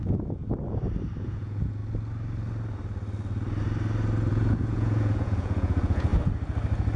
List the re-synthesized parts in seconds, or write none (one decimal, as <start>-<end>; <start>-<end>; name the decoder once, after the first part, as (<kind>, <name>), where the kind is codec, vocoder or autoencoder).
0.0-0.4 (vocoder, Vocos); 1.2-1.8; 4.3-6.1